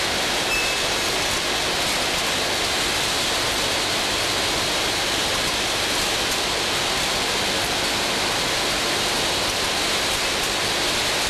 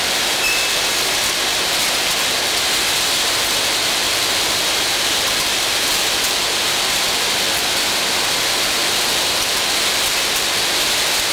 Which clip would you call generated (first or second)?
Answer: second